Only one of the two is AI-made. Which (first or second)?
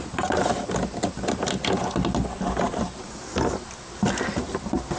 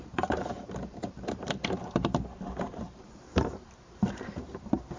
second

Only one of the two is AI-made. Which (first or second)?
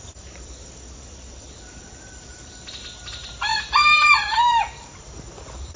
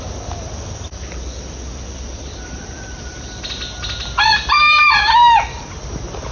first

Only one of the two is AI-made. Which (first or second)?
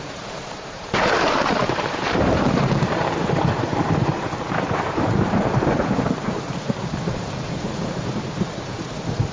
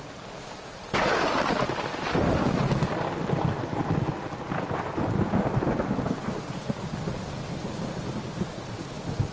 first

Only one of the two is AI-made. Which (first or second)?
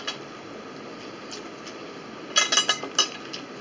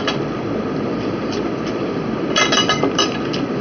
second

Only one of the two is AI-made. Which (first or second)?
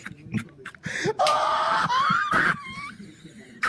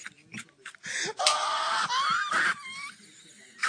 first